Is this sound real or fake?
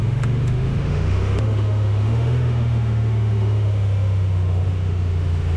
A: fake